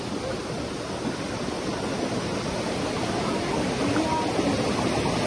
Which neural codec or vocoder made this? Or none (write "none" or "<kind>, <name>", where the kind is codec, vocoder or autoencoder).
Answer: none